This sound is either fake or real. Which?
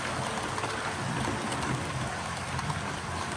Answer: real